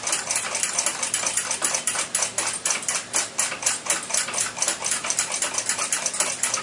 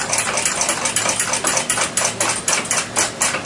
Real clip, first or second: second